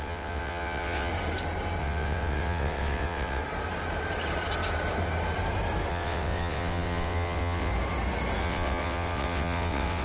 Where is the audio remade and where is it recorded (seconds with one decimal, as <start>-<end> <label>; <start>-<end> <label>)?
0.0-1.1 remade; 1.1-1.8 recorded; 1.8-3.4 remade; 3.4-5.9 recorded; 5.9-7.7 remade; 7.7-8.4 recorded; 8.4-10.0 remade